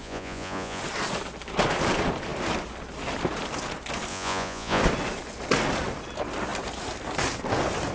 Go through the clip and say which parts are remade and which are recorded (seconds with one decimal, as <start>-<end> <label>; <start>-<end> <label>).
0.0-0.8 remade; 0.8-4.1 recorded; 4.1-4.8 remade; 4.8-7.9 recorded